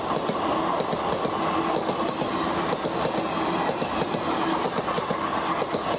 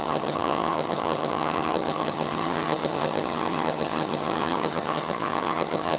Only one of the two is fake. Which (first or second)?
second